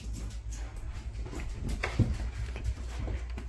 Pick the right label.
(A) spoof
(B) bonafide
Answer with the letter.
B